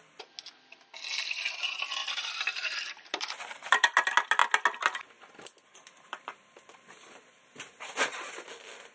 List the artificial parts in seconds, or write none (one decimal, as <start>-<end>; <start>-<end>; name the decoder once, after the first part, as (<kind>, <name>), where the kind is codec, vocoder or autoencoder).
2.0-3.2 (vocoder, BigVGAN v2); 5.7-7.1